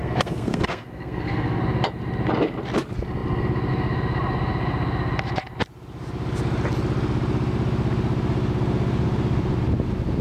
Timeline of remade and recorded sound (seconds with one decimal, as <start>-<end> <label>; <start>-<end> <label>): 0.0-1.6 remade; 1.6-10.2 recorded